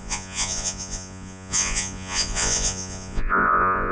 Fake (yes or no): yes